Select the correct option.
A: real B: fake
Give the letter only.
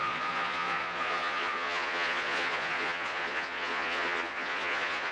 B